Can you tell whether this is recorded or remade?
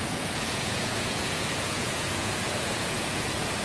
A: remade